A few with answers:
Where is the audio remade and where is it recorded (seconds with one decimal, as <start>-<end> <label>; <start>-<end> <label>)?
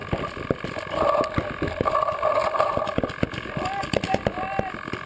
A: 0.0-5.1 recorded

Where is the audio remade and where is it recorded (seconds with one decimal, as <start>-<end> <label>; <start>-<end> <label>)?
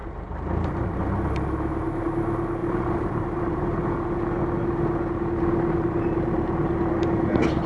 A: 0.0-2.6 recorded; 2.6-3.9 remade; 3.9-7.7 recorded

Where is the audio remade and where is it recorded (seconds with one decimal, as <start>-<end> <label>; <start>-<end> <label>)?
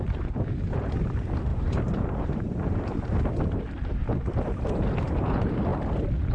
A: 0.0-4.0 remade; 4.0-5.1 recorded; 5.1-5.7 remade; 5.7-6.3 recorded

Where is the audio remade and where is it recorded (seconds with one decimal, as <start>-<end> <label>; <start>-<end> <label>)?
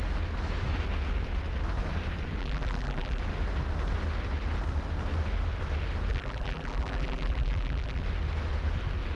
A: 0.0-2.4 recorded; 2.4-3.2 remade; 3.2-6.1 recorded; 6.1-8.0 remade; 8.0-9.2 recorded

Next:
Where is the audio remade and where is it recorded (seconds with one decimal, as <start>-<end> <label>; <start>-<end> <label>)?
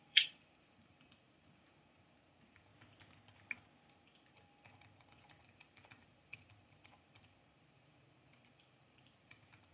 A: 0.0-2.7 remade; 2.7-3.9 recorded; 3.9-9.7 remade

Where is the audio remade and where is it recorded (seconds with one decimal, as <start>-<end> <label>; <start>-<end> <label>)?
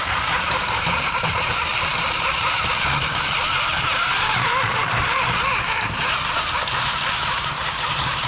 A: 0.0-8.3 remade